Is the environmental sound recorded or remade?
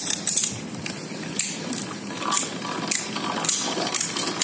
recorded